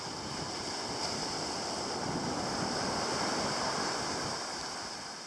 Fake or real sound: real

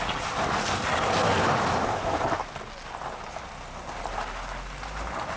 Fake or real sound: real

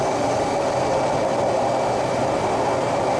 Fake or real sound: real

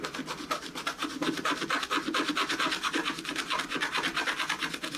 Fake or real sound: real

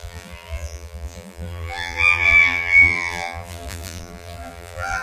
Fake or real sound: fake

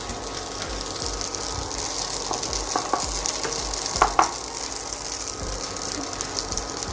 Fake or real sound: real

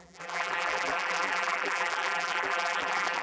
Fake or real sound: fake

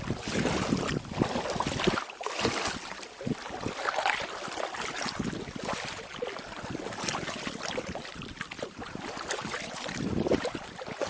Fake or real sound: real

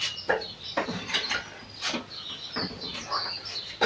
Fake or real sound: real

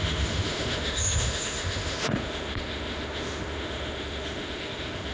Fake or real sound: fake